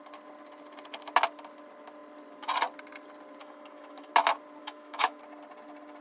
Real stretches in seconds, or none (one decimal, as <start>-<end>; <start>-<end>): 0.0-3.4; 4.1-4.6; 5.2-6.0